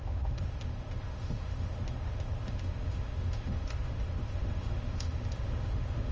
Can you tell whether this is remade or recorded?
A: remade